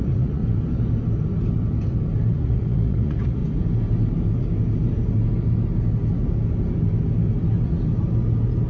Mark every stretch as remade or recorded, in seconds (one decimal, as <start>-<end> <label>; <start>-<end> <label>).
0.0-0.4 remade; 0.4-2.3 recorded; 2.3-3.4 remade; 3.4-8.7 recorded